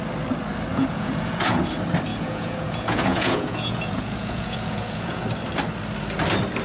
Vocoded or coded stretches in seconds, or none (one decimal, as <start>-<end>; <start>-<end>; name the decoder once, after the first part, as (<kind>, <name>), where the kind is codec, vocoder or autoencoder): 0.7-1.7 (vocoder, Vocos); 2.1-5.2